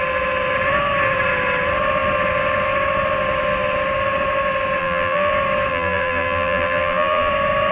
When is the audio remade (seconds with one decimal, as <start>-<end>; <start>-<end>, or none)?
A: 4.8-5.3; 5.7-7.3